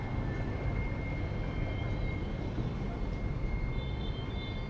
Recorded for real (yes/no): yes